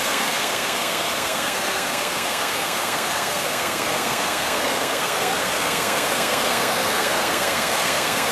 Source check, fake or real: fake